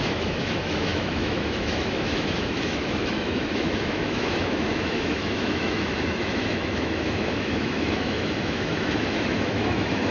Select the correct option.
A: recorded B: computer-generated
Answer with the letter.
B